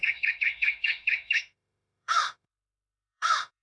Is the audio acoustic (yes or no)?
no